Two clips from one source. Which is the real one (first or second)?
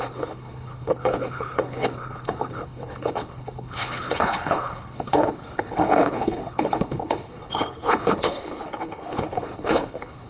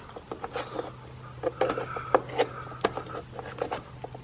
second